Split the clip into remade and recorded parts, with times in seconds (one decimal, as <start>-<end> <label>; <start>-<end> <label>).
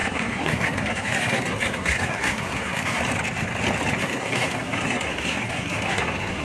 0.0-3.0 remade; 3.0-4.0 recorded; 4.0-6.4 remade